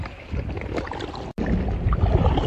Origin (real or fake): real